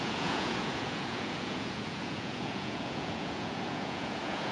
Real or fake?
fake